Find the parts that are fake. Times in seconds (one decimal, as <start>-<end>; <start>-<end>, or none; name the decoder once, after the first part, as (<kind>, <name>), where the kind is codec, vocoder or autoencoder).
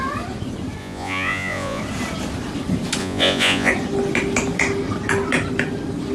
0.8-1.8 (vocoder, Vocos); 3.0-3.7